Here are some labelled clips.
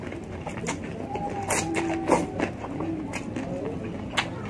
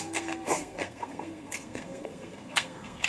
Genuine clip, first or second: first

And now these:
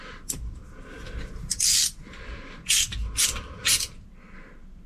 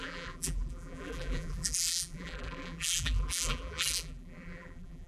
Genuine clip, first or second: first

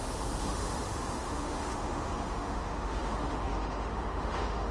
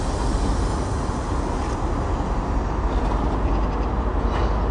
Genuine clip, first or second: second